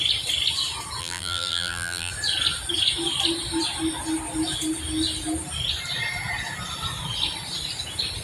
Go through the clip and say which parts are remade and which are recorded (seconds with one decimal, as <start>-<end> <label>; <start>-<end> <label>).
0.0-1.0 recorded; 1.0-2.1 remade; 2.1-8.2 recorded